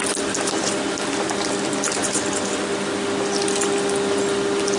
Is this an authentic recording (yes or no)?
yes